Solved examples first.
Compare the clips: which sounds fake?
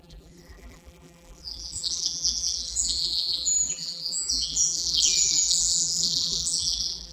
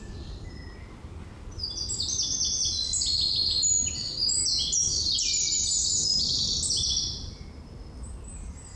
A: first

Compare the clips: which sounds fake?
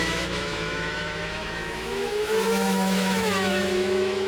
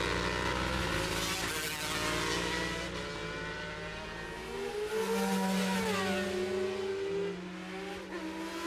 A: first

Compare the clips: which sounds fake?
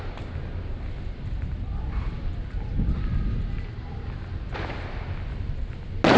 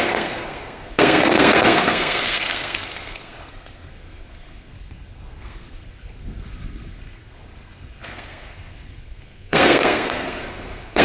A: second